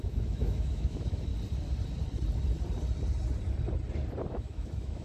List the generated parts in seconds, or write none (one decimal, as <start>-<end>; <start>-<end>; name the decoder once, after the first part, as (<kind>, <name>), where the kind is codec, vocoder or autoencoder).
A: 0.0-1.3 (autoencoder, DAC-VAE); 4.3-5.0